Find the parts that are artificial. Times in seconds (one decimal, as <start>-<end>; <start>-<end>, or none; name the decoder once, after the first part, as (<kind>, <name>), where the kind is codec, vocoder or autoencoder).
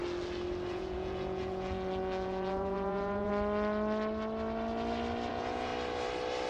0.7-3.3 (vocoder, Vocos); 5.3-5.7